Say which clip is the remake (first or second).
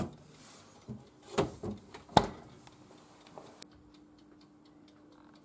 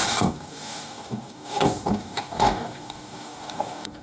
second